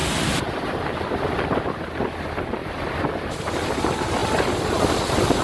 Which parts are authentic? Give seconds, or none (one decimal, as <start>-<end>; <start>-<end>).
0.0-5.4

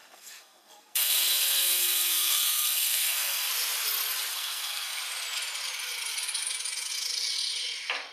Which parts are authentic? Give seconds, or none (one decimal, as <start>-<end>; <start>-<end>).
3.5-4.3; 5.0-8.1

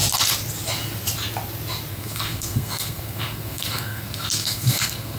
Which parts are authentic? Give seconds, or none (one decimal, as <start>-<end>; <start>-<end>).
0.0-1.9

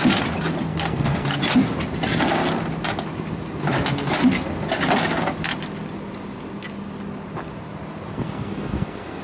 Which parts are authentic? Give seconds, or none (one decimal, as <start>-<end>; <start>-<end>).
0.0-0.7; 1.4-8.1